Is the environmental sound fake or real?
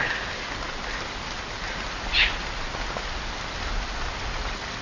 real